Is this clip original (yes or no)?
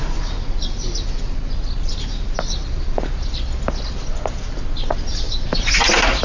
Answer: yes